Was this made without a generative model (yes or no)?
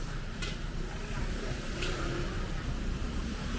no